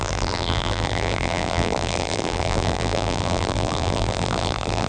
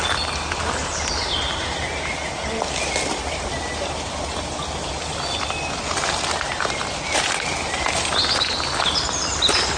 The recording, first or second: second